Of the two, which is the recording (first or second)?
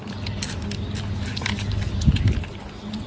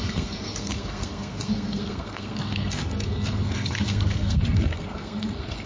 first